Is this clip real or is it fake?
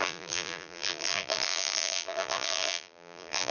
fake